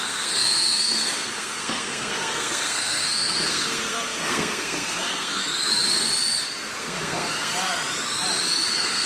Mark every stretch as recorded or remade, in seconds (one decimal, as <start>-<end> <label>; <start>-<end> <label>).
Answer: 0.0-5.4 remade; 5.4-6.8 recorded; 6.8-7.5 remade; 7.5-8.7 recorded; 8.7-9.1 remade